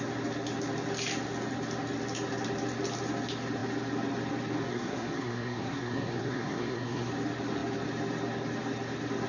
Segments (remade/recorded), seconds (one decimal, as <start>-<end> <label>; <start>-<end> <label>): 0.0-4.7 recorded; 4.7-7.1 remade; 7.1-9.3 recorded